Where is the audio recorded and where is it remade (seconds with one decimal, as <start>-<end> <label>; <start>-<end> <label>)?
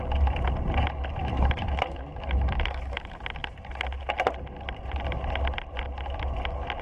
0.0-1.2 recorded; 1.2-3.2 remade; 3.2-6.8 recorded